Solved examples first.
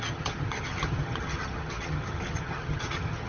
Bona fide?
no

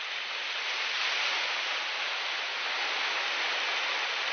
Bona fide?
yes